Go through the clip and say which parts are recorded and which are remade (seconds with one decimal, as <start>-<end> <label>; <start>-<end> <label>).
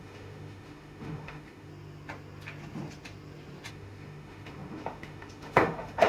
0.0-1.7 remade; 1.7-3.7 recorded; 3.7-6.1 remade